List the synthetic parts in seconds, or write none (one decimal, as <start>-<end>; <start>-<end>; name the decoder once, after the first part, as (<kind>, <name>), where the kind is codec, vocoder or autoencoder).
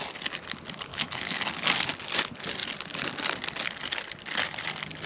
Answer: 0.9-1.4 (autoencoder, DAC-VAE)